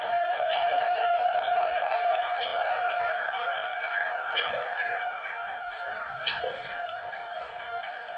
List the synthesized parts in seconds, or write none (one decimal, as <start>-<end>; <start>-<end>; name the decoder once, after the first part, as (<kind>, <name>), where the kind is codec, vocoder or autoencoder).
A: 0.0-8.2 (codec, DAC)

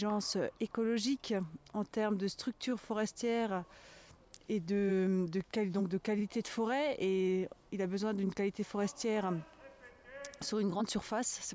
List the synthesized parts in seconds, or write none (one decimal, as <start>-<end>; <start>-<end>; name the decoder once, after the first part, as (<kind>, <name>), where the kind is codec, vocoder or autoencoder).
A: 4.9-5.8 (codec, DAC)

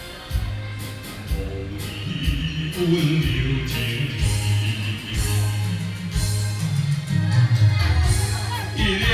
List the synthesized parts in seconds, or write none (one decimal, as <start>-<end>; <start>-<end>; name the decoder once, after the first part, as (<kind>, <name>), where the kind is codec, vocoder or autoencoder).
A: none

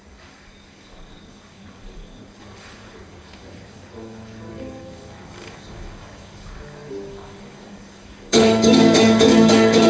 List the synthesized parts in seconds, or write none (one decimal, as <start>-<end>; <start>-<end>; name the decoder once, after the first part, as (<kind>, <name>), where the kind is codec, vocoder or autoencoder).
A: 0.0-9.9 (codec, DAC)

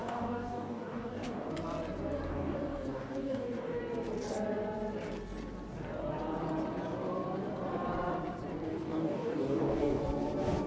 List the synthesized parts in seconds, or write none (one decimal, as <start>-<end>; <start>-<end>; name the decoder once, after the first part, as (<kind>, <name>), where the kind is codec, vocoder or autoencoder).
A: 0.0-1.5 (codec, DAC); 2.3-3.8; 8.6-10.0

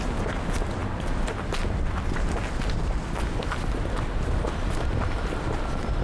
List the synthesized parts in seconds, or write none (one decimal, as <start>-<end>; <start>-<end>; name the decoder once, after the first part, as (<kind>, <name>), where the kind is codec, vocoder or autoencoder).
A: none

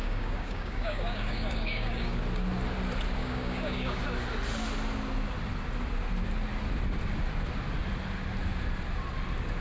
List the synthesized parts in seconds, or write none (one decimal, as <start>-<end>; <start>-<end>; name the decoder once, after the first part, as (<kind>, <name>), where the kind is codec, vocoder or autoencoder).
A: 0.0-2.2 (codec, DAC); 3.2-4.0